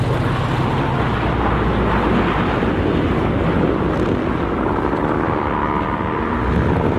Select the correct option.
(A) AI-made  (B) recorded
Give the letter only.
B